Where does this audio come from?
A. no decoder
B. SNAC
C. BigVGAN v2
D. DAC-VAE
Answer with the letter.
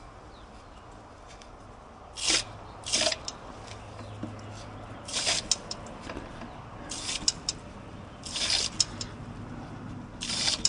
A